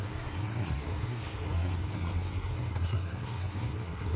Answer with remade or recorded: remade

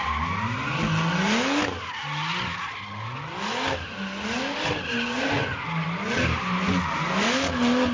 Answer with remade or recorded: recorded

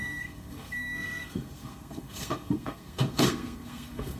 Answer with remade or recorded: remade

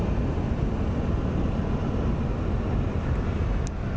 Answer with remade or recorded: recorded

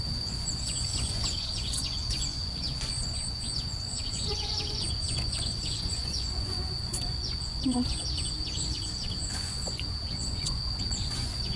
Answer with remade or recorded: remade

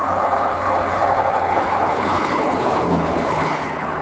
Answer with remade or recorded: remade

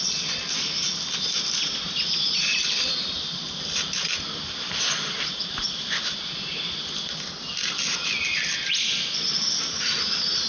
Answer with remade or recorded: recorded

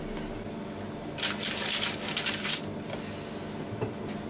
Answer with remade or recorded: recorded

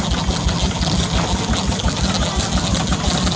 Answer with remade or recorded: recorded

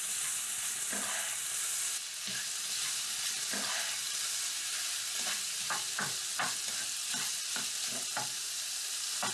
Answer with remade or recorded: recorded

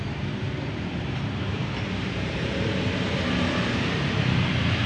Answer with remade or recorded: remade